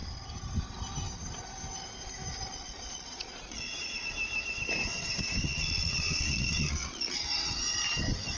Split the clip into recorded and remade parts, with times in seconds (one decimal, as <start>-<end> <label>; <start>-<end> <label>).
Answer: 0.0-2.5 recorded; 2.5-4.0 remade; 4.0-5.4 recorded; 5.4-7.6 remade; 7.6-8.4 recorded